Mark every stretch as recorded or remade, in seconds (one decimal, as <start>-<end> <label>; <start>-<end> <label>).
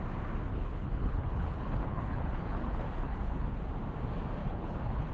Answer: 0.0-0.5 recorded; 0.5-3.6 remade; 3.6-4.4 recorded; 4.4-5.1 remade